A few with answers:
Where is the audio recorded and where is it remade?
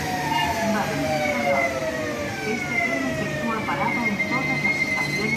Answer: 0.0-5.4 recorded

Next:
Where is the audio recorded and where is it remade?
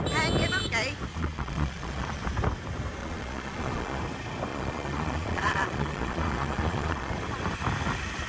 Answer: 0.0-1.1 recorded; 1.1-2.2 remade; 2.2-3.0 recorded; 3.0-4.0 remade; 4.0-4.5 recorded; 4.5-7.1 remade; 7.1-8.3 recorded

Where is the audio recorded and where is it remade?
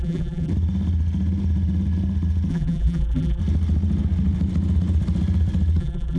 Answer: 0.0-0.5 remade; 0.5-2.5 recorded; 2.5-3.4 remade; 3.4-5.8 recorded; 5.8-6.2 remade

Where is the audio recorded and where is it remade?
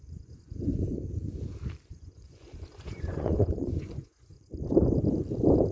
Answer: 0.0-0.9 remade; 0.9-1.9 recorded; 1.9-4.5 remade; 4.5-5.7 recorded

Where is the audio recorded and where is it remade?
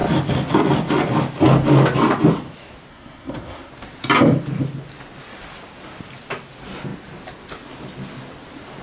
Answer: 0.0-2.9 recorded; 2.9-3.7 remade; 3.7-8.8 recorded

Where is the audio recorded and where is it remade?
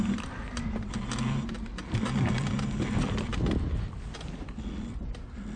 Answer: 0.0-5.6 recorded